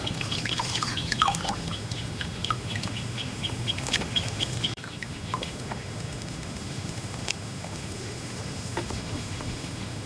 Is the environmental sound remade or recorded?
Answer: remade